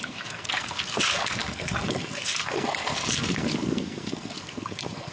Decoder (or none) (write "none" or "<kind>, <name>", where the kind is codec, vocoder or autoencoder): codec, SNAC